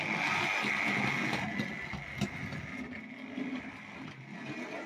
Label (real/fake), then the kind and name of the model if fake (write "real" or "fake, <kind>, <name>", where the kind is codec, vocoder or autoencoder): real